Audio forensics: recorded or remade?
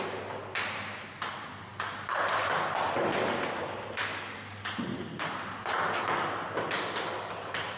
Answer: recorded